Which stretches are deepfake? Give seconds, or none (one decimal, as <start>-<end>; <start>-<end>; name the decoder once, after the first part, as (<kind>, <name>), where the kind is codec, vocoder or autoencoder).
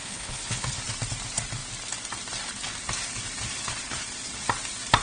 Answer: 0.0-0.8 (codec, HILCodec)